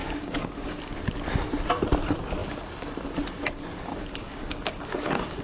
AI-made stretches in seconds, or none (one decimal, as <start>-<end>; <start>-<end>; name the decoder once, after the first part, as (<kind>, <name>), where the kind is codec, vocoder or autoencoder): 0.0-0.8 (codec, DAC); 3.9-5.4

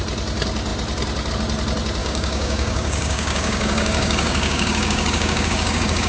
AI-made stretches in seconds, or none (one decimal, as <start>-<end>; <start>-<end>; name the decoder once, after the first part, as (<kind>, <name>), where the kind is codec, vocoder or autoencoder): 2.0-6.1 (codec, DAC)

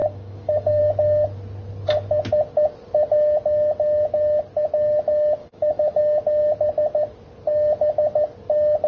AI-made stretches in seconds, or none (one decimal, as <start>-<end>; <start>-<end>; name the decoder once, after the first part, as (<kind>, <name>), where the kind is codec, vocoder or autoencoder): 0.0-0.8 (codec, DAC); 5.4-6.0

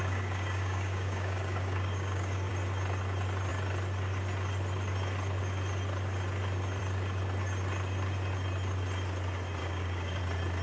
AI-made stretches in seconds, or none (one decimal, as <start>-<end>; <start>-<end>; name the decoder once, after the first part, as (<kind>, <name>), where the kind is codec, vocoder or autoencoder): 0.0-2.5 (codec, DAC); 9.6-10.2

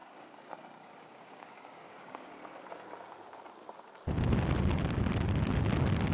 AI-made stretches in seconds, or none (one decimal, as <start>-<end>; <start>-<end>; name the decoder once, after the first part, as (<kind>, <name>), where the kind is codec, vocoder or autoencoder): 0.0-2.3 (codec, DAC)

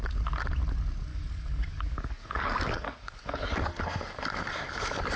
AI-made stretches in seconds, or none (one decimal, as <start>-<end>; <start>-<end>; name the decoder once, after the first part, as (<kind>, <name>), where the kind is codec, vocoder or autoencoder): 1.1-3.5 (codec, DAC)

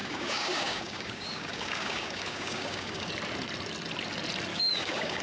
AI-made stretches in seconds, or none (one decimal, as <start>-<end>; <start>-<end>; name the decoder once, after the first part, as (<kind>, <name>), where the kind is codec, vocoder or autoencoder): 0.0-3.1 (codec, DAC); 4.5-5.2